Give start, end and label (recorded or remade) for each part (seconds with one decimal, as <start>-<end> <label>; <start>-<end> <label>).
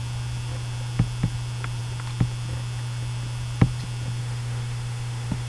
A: 0.0-4.2 recorded; 4.2-5.5 remade